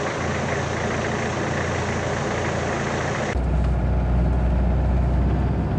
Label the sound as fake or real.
real